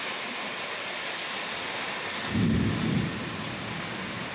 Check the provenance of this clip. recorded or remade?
recorded